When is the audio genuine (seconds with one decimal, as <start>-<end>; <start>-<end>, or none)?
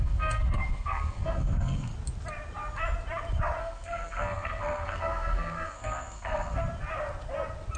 1.9-3.6; 6.6-7.8